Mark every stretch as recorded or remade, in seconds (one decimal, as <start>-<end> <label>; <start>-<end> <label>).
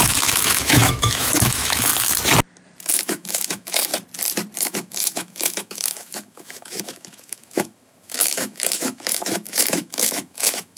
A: 0.0-1.9 remade; 1.9-2.9 recorded; 2.9-3.9 remade; 3.9-4.6 recorded; 4.6-10.8 remade